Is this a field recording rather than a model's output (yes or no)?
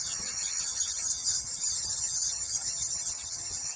no